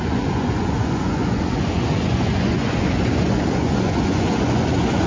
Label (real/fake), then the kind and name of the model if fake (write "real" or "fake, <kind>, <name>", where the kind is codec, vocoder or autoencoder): fake, vocoder, Vocos